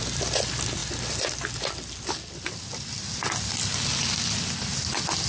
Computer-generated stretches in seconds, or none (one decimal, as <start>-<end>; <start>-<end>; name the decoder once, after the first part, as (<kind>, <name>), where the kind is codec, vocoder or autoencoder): none